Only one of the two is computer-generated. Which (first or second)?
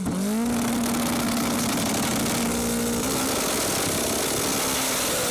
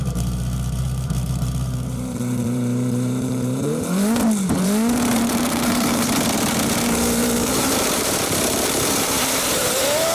second